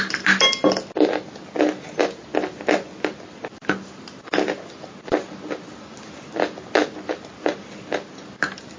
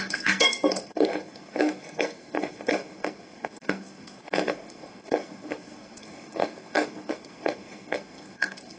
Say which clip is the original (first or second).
first